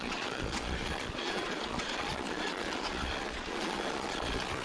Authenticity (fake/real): fake